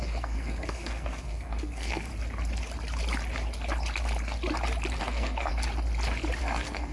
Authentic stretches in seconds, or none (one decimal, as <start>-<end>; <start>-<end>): 2.1-5.0; 5.5-6.4